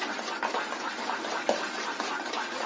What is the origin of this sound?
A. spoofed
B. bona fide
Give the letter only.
B